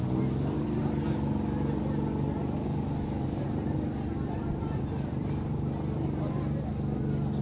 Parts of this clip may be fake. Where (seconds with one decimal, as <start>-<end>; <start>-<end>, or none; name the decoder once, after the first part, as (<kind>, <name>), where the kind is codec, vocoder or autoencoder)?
2.4-6.7 (vocoder, BigVGAN v2)